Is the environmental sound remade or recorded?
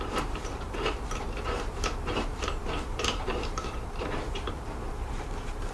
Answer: remade